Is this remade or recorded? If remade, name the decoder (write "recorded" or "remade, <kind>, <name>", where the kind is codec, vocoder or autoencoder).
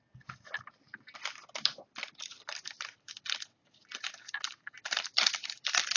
recorded